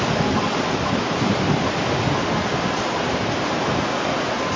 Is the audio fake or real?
real